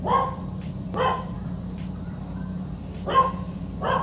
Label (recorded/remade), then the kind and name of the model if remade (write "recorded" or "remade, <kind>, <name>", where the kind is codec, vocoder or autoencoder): remade, vocoder, BigVGAN v2